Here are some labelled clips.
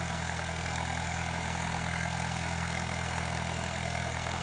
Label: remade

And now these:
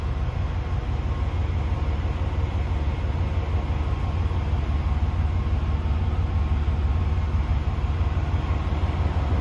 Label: recorded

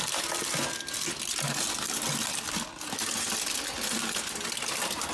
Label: recorded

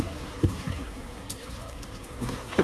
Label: remade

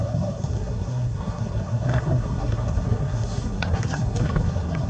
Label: remade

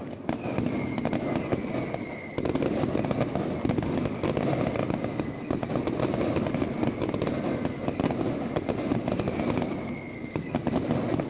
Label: recorded